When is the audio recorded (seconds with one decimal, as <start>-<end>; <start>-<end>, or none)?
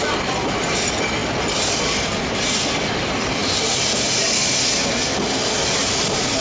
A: 0.0-6.4